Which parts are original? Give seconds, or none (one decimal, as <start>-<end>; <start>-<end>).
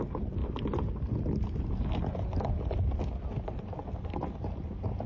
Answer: 0.0-5.1